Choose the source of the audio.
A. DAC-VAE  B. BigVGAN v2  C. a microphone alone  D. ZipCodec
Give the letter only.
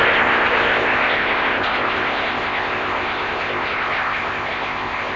D